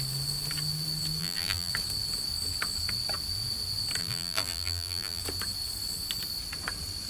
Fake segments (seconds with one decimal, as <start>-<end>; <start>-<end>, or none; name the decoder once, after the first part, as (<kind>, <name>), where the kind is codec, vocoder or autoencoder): 1.2-1.7 (vocoder, BigVGAN v2); 4.0-5.2